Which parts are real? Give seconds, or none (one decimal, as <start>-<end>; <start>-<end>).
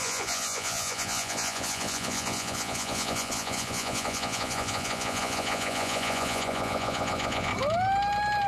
7.5-8.5